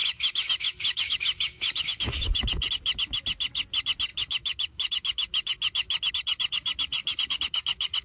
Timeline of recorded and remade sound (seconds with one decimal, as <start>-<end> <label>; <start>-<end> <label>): 0.0-2.7 remade; 2.7-4.1 recorded; 4.1-6.1 remade; 6.1-7.0 recorded; 7.0-8.0 remade